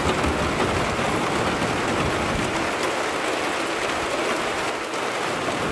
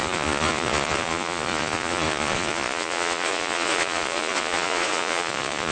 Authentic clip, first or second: first